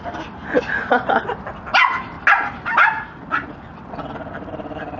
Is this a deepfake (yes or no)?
no